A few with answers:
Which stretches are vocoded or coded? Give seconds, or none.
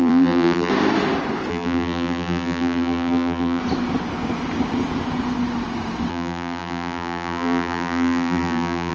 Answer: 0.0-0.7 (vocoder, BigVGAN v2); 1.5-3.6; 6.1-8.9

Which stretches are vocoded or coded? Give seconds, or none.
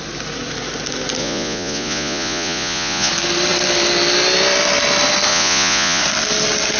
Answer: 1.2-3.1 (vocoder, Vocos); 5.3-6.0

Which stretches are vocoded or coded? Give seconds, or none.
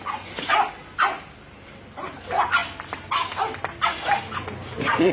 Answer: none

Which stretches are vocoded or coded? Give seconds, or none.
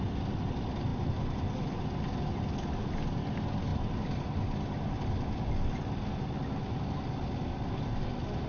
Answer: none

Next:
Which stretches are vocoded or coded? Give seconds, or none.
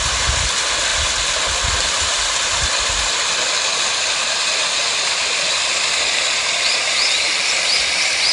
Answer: none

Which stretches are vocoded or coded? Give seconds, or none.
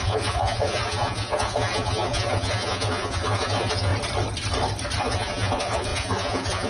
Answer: 0.0-3.9 (vocoder, Vocos); 5.0-6.7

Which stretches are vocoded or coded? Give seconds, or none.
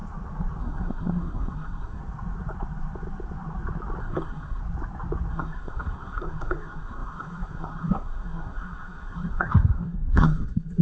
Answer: 0.6-2.0 (codec, SNAC); 4.0-4.6; 5.3-10.8